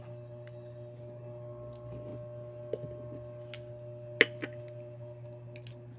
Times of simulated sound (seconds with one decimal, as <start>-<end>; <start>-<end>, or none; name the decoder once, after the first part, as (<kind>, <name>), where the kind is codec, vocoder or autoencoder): none